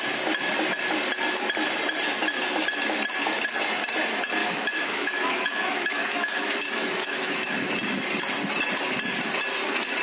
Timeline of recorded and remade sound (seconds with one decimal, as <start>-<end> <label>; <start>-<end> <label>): 0.0-4.4 recorded; 4.4-7.7 remade; 7.7-10.0 recorded